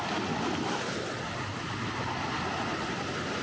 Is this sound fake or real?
real